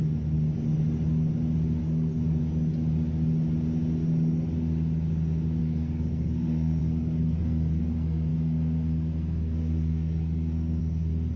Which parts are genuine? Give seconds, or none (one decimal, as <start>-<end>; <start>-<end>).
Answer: 0.0-1.8; 2.4-5.6